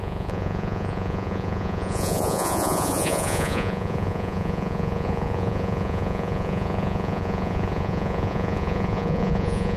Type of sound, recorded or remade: remade